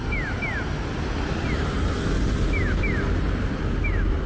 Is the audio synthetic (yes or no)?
no